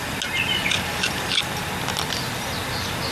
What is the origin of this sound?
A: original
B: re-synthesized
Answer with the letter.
A